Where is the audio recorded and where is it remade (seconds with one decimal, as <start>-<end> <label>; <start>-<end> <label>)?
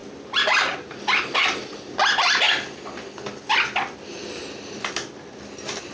0.0-5.9 recorded